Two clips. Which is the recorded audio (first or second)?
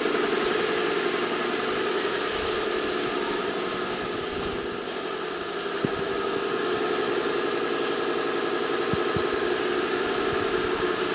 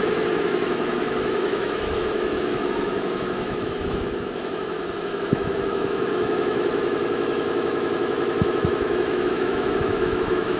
first